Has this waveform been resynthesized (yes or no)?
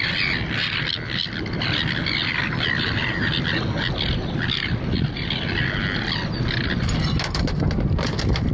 no